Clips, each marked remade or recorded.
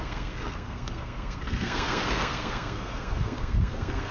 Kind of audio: remade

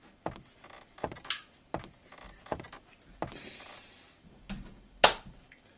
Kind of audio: recorded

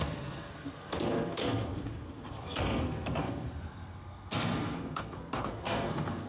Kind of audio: remade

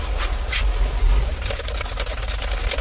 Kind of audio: recorded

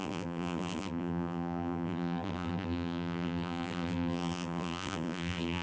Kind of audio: remade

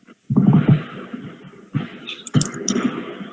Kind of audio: recorded